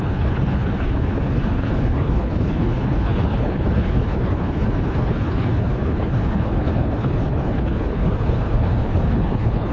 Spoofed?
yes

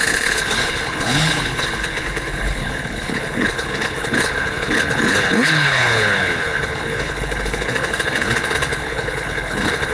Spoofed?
yes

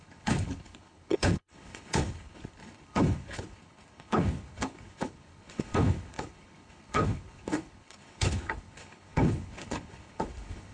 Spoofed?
yes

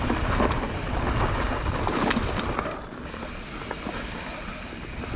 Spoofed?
no